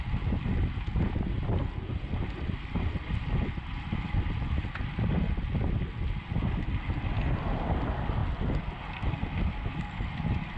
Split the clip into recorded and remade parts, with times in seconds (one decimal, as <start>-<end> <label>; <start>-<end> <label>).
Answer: 0.0-10.6 recorded